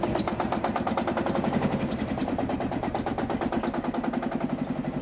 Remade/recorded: recorded